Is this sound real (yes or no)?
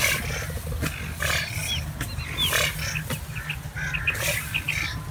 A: yes